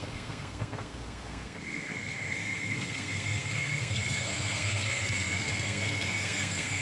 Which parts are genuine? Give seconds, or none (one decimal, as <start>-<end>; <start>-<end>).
none